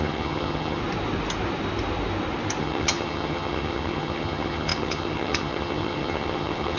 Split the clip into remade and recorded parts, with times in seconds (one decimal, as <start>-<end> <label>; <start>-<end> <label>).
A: 0.0-0.8 remade; 0.8-2.6 recorded; 2.6-6.8 remade